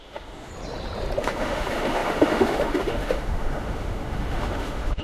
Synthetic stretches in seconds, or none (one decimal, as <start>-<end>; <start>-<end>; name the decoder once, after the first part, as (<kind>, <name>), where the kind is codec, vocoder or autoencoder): 0.0-0.5 (autoencoder, DAC-VAE); 1.2-5.0